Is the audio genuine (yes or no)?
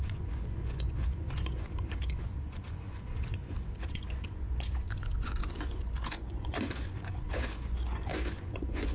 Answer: no